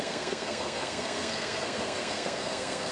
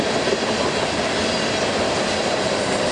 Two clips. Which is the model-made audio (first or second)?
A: first